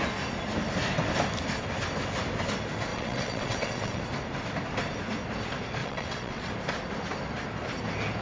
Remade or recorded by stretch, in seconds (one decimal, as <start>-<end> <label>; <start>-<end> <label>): 0.0-2.9 recorded; 2.9-4.0 remade; 4.0-5.8 recorded; 5.8-6.5 remade; 6.5-8.2 recorded